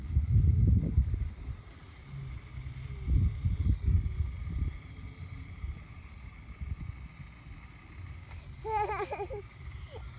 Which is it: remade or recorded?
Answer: recorded